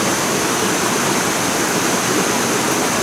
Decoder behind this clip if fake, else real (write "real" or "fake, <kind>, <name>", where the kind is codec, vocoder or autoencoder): real